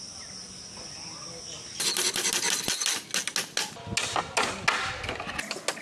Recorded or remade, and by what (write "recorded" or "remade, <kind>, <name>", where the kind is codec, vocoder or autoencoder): recorded